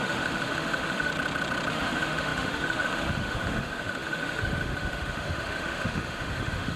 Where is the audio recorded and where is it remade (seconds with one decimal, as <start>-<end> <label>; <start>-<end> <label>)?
0.0-1.1 remade; 1.1-1.7 recorded; 1.7-6.8 remade